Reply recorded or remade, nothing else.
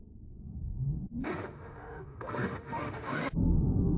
remade